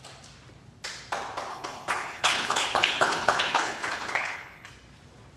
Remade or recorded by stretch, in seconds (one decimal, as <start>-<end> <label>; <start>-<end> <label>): 0.0-1.5 recorded; 1.5-4.7 remade; 4.7-5.4 recorded